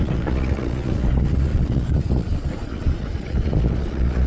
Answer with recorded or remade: remade